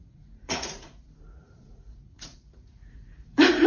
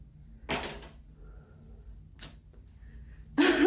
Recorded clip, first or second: second